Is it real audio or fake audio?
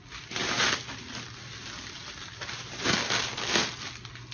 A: real